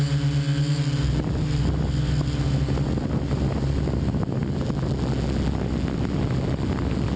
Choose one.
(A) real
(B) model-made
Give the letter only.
A